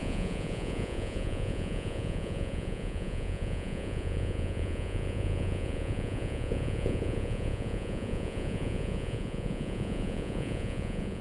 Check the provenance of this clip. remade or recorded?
remade